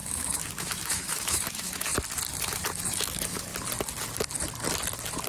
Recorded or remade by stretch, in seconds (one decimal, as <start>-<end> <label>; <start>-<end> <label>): 0.0-1.9 remade; 1.9-2.4 recorded; 2.4-3.5 remade; 3.5-5.3 recorded